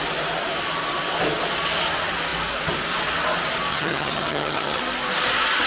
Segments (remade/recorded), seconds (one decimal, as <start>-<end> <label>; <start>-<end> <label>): 0.0-3.7 recorded; 3.7-4.8 remade; 4.8-5.7 recorded